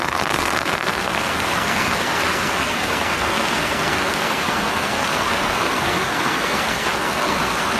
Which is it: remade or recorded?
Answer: remade